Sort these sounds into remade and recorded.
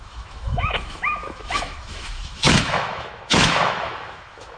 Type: remade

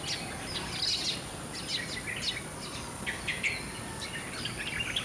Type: recorded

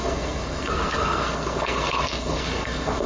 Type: remade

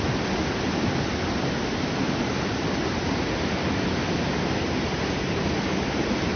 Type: recorded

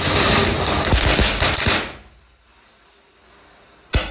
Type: recorded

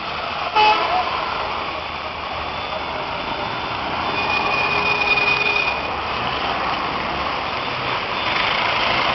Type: recorded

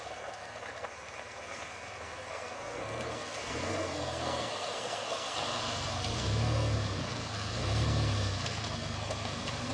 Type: remade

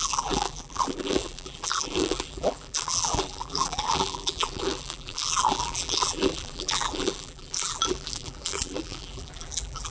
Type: remade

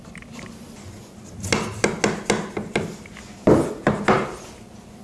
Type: recorded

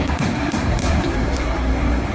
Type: remade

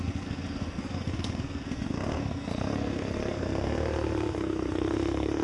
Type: remade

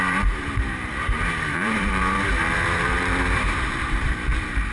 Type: remade